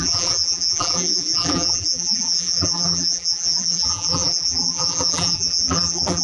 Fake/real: fake